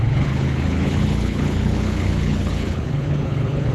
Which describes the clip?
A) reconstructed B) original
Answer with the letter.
A